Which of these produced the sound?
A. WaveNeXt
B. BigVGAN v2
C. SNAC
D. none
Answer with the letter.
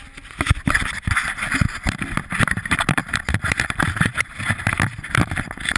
B